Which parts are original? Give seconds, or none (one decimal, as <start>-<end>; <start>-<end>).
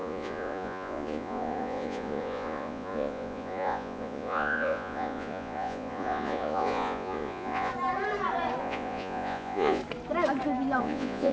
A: 7.7-8.6; 9.8-10.8